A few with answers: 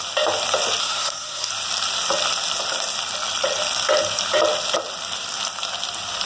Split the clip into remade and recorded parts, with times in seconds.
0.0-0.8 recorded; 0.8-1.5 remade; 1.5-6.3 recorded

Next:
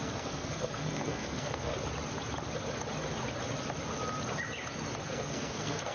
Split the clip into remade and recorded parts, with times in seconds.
0.0-1.7 remade; 1.7-5.0 recorded; 5.0-5.9 remade

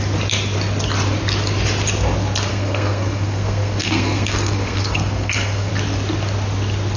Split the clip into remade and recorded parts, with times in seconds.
0.0-2.5 recorded; 2.5-5.7 remade; 5.7-7.0 recorded